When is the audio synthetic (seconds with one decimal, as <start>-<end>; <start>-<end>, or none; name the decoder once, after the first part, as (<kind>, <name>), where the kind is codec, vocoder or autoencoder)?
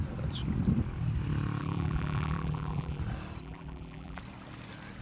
1.6-3.0 (vocoder, BigVGAN v2); 3.4-4.2